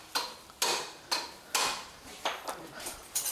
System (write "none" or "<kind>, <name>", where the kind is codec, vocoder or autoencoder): none